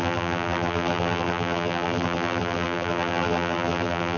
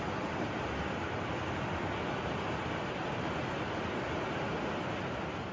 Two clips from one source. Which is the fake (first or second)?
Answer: first